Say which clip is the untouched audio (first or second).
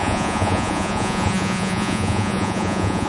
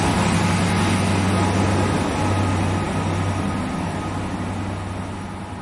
second